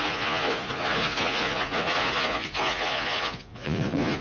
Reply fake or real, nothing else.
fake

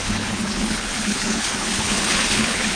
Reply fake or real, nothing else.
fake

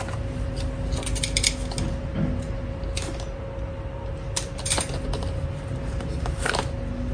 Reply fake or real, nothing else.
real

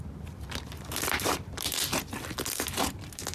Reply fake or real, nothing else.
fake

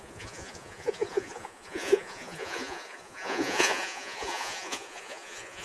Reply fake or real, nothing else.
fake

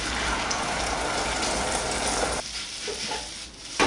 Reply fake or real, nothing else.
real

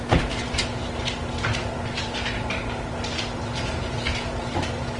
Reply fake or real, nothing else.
real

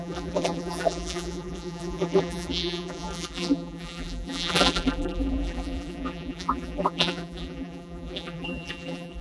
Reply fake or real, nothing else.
fake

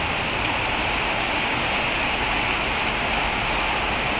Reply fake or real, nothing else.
real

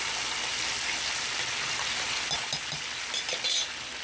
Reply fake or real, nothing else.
real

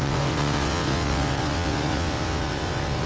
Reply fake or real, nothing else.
fake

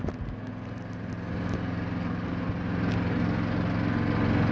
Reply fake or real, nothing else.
real